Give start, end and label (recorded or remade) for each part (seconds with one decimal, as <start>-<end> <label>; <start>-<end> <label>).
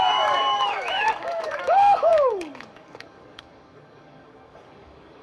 0.0-5.2 remade